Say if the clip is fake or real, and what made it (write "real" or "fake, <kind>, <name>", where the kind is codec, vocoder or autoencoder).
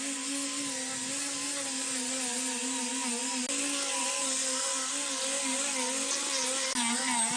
real